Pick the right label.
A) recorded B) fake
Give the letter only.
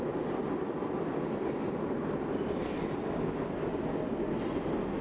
A